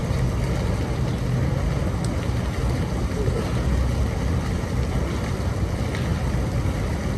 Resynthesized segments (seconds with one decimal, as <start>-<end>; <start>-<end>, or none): none